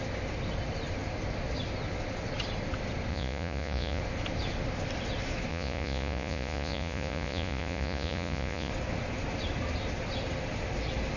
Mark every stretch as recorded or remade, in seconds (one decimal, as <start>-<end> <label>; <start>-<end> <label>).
0.0-3.1 recorded; 3.1-4.0 remade; 4.0-5.5 recorded; 5.5-8.7 remade; 8.7-11.2 recorded